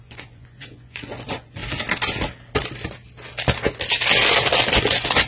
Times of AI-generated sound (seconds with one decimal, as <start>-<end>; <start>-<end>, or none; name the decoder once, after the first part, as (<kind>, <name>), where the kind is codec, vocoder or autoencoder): 0.0-1.6 (vocoder, Vocos); 4.8-5.3